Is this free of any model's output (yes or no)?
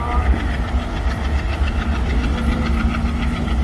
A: yes